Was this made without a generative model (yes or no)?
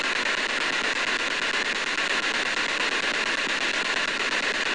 yes